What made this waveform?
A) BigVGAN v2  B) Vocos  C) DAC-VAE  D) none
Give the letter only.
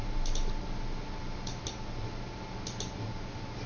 D